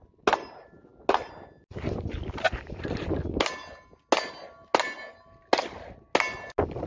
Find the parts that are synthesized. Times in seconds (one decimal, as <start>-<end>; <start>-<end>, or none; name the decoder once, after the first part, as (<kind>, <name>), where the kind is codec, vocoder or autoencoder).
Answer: none